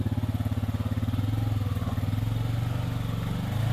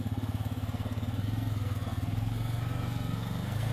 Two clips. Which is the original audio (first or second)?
first